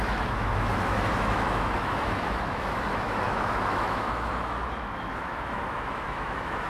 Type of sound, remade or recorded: remade